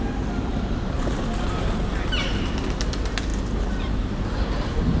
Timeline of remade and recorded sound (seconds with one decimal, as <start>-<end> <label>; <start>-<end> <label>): 0.0-0.5 recorded; 0.5-1.0 remade; 1.0-2.2 recorded; 2.2-2.8 remade; 2.8-5.0 recorded